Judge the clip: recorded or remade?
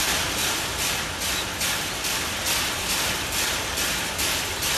recorded